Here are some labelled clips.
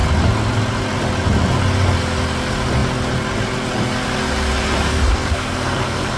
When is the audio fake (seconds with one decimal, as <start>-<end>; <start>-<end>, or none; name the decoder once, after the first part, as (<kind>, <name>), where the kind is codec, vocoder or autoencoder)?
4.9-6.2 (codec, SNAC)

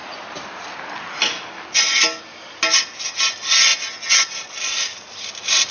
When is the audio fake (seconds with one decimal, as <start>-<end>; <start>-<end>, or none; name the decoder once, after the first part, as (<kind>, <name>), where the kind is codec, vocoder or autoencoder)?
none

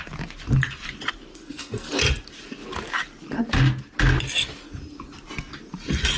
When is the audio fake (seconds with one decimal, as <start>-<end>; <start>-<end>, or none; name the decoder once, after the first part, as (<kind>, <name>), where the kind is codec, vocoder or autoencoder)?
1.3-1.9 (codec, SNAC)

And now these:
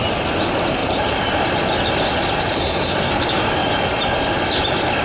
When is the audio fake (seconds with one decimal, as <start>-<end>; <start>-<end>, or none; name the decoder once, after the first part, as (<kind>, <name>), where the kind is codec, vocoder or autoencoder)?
2.6-3.1 (codec, SNAC)